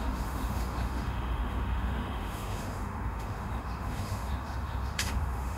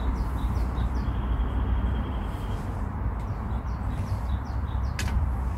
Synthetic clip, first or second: first